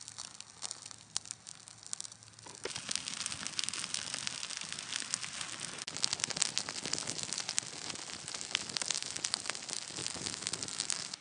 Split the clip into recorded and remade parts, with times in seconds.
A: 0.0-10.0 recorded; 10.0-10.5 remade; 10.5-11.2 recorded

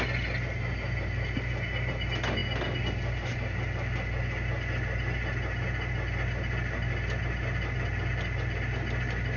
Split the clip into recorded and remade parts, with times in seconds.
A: 0.0-9.4 recorded

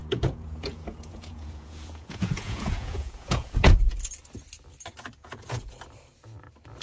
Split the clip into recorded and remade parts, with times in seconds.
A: 0.0-4.1 remade; 4.1-5.2 recorded; 5.2-5.7 remade; 5.7-6.8 recorded

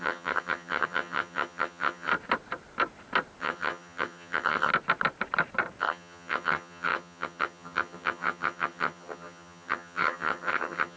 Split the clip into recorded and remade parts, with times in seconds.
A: 0.0-2.1 remade; 2.1-3.4 recorded; 3.4-4.7 remade; 4.7-5.8 recorded; 5.8-11.0 remade

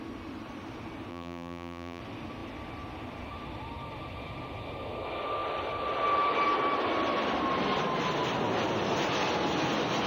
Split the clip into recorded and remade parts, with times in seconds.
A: 0.0-1.1 recorded; 1.1-2.0 remade; 2.0-10.1 recorded

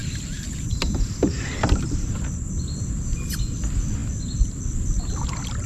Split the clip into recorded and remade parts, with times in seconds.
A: 0.0-2.2 remade; 2.2-5.7 recorded

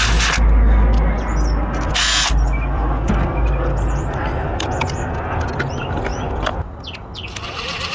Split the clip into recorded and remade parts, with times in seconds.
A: 0.0-7.9 recorded